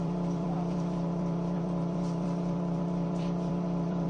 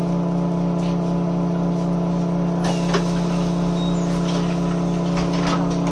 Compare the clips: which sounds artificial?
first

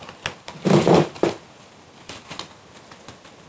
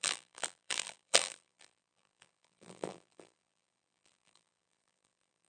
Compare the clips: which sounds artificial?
second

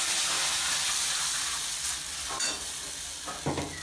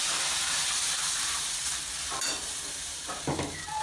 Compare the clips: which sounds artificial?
second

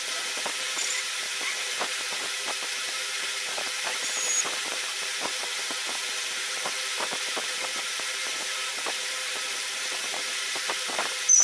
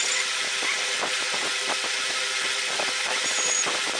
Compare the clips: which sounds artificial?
first